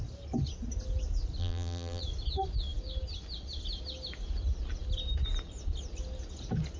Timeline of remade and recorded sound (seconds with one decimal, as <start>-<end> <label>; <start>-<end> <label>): 0.0-1.4 recorded; 1.4-2.0 remade; 2.0-6.8 recorded